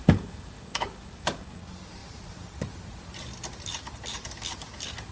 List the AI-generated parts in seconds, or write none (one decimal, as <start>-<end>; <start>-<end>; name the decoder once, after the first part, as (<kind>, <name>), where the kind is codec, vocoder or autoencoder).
0.0-1.6 (codec, DAC)